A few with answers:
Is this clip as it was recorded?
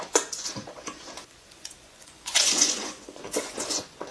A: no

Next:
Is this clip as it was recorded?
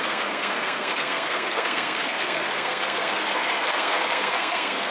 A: no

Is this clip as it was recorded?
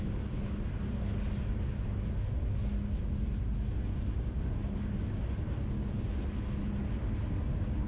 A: yes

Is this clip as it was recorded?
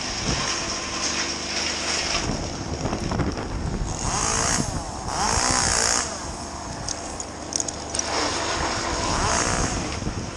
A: yes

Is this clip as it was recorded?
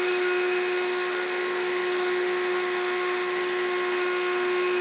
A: no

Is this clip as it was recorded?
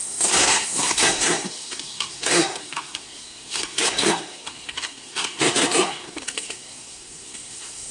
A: no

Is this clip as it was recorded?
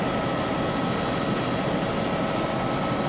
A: yes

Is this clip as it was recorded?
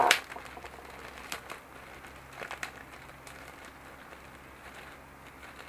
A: yes